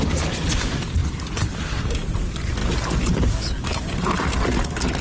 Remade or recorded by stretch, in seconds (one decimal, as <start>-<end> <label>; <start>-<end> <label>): 0.0-5.0 recorded